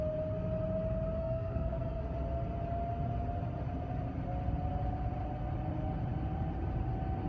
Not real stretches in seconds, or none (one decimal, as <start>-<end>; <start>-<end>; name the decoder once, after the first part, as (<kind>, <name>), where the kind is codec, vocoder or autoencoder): 1.2-2.0 (codec, SNAC)